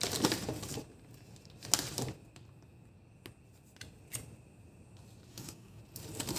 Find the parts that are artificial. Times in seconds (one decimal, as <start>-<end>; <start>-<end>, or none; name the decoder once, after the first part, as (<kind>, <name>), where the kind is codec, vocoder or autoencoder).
5.3-5.8 (codec, DAC)